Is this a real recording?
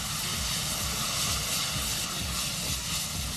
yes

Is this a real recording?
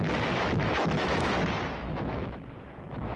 no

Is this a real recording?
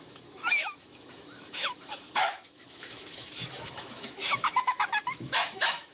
no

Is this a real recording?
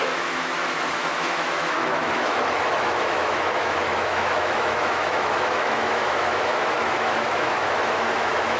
no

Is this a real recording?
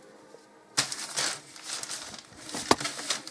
yes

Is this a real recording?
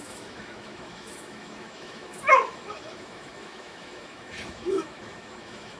no